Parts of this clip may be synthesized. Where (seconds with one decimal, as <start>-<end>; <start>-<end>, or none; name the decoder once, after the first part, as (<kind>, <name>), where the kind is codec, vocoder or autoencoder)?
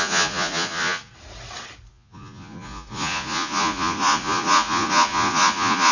0.0-1.1 (vocoder, Vocos); 1.9-5.9